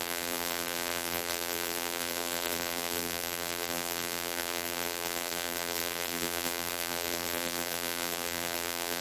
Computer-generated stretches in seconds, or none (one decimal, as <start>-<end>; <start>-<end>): 0.0-9.0